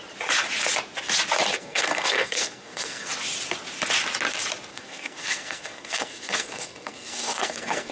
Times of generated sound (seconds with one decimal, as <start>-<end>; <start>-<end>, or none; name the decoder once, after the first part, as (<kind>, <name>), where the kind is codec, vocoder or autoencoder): 1.5-3.1 (codec, SNAC); 4.7-7.9